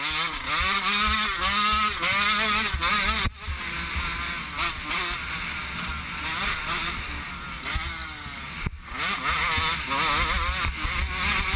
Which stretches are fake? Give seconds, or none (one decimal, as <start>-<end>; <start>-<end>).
none